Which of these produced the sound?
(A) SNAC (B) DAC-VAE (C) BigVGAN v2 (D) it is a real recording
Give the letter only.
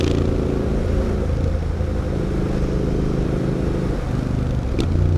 D